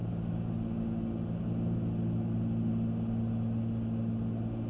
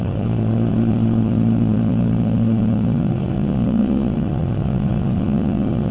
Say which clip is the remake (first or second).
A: second